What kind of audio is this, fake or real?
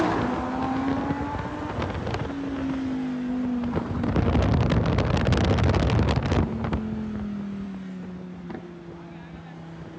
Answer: real